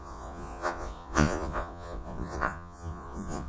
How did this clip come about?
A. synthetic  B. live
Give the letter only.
A